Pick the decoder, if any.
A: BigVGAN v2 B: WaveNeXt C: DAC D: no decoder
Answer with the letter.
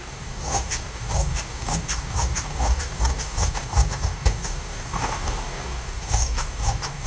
C